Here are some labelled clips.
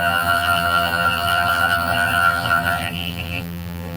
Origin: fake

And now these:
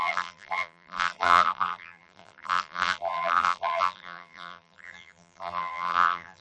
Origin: fake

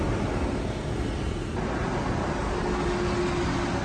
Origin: real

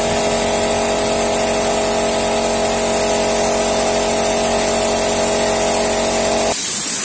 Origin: real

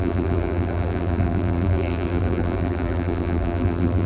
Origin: fake